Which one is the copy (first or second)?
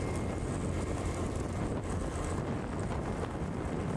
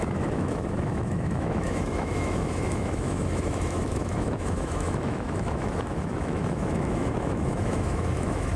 second